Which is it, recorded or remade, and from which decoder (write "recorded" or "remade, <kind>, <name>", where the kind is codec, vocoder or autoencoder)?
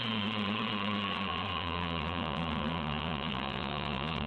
remade, vocoder, Vocos